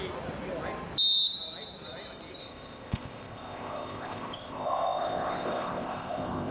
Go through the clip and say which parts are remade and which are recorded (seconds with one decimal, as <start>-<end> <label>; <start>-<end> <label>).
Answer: 0.0-2.4 recorded; 2.4-6.5 remade